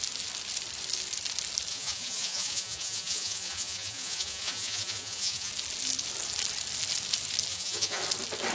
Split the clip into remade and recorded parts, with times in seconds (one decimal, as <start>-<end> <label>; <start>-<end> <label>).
0.0-1.7 recorded; 1.7-5.5 remade; 5.5-7.5 recorded; 7.5-8.0 remade; 8.0-8.5 recorded